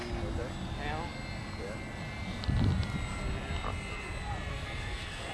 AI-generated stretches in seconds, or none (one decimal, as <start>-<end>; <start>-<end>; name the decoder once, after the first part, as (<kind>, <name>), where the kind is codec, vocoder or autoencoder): 4.5-5.3 (codec, SNAC)